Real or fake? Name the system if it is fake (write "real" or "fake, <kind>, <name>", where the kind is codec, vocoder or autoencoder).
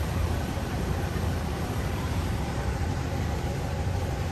fake, vocoder, BigVGAN v2